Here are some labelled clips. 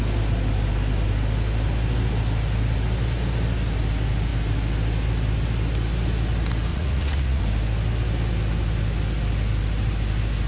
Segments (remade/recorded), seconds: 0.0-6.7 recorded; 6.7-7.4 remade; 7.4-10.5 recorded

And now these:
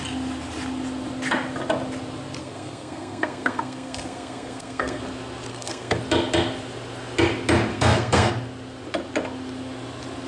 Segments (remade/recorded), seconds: 0.0-2.4 recorded; 2.4-5.0 remade; 5.0-5.5 recorded; 5.5-6.0 remade; 6.0-7.7 recorded; 7.7-8.3 remade; 8.3-10.3 recorded

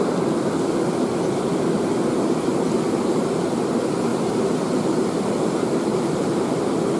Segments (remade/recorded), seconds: 0.0-4.1 recorded; 4.1-5.3 remade; 5.3-5.9 recorded; 5.9-6.6 remade; 6.6-7.0 recorded

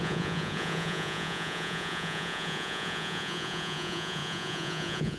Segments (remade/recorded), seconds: 0.0-5.2 remade